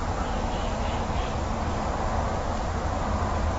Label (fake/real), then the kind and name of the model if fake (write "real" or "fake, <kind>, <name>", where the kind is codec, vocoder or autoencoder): real